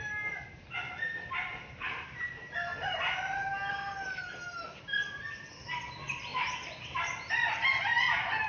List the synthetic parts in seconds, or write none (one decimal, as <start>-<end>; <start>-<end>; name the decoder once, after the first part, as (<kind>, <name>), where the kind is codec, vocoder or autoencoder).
6.3-7.3 (vocoder, BigVGAN v2)